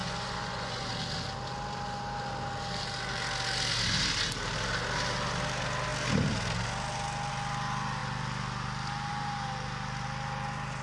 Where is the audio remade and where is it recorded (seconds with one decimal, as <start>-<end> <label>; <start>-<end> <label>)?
0.0-0.9 remade; 0.9-10.8 recorded